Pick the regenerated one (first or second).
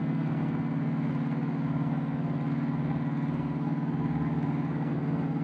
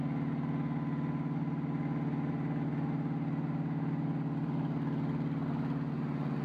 first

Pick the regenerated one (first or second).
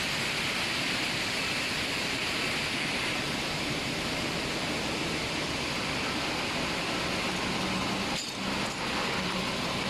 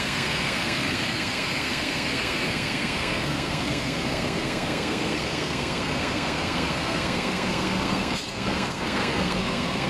second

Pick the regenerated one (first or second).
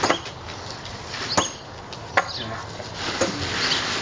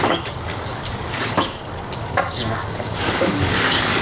second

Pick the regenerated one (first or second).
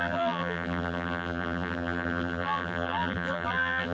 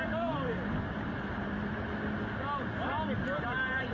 first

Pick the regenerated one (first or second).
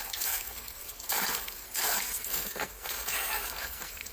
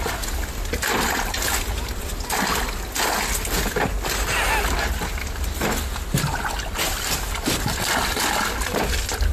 first